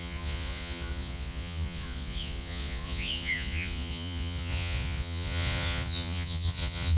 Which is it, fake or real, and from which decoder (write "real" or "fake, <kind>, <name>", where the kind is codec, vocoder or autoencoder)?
fake, vocoder, Vocos